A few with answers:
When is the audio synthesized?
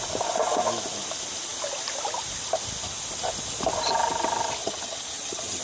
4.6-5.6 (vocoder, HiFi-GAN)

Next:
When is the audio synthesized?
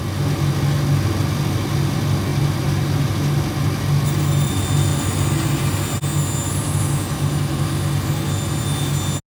none